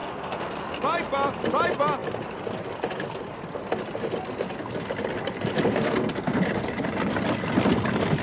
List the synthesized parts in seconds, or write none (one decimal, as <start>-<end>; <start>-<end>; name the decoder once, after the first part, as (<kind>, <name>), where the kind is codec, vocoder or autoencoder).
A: 0.0-0.5 (codec, SNAC); 5.7-6.4

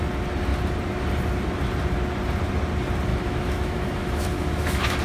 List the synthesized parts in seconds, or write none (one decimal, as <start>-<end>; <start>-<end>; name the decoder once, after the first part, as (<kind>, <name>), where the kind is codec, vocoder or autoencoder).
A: 3.1-5.0 (autoencoder, DAC-VAE)

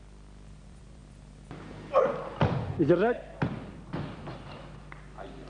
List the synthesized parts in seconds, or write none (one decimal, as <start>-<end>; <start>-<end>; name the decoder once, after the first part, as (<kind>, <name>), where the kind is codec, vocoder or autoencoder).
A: 0.0-1.0 (vocoder, BigVGAN v2); 1.9-5.5

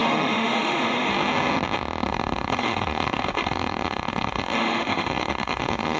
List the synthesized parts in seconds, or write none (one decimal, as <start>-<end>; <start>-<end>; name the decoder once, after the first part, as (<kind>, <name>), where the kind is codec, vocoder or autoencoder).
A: 0.0-1.1 (autoencoder, DAC-VAE); 2.1-6.0

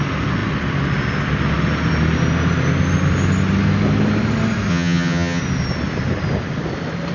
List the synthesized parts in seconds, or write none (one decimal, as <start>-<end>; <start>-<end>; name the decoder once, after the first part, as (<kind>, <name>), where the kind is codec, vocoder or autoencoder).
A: 4.7-5.4 (vocoder, HiFi-GAN)

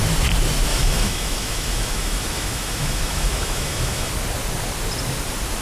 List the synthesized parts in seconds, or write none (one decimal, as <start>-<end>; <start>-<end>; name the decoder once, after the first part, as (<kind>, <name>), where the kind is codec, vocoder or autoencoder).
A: 0.7-4.1 (autoencoder, DAC-VAE)